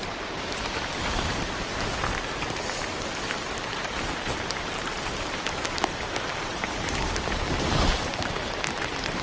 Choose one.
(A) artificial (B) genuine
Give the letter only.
A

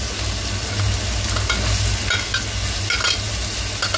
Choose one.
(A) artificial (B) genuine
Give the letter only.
B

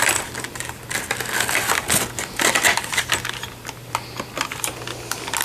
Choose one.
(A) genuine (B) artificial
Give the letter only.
A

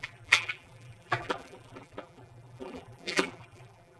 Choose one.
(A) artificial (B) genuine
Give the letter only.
A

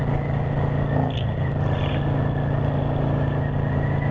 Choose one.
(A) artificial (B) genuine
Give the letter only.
B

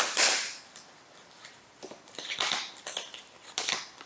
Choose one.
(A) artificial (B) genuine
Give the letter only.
A